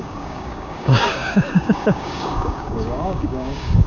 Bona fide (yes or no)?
no